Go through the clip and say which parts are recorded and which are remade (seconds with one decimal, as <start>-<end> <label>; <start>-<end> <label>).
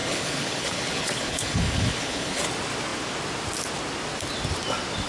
0.0-2.4 remade; 2.4-5.1 recorded